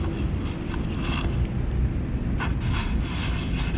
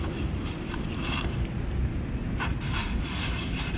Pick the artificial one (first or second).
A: second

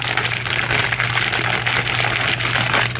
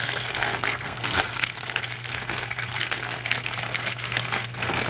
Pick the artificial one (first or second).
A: second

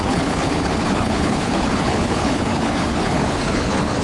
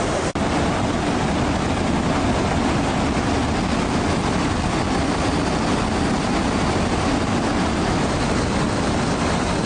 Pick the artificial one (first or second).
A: first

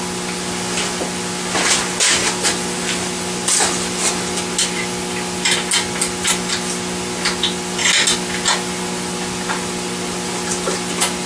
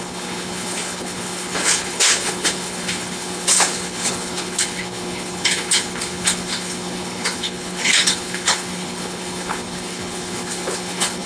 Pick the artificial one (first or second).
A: second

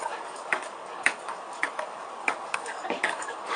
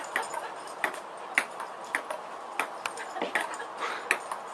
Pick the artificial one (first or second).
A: first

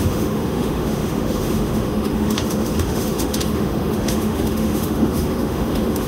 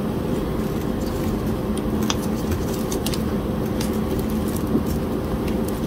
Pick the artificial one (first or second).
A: first